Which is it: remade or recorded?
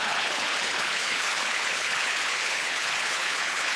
remade